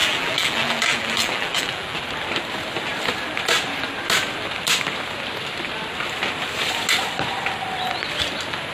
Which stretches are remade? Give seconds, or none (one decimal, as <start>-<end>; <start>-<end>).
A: 0.0-2.0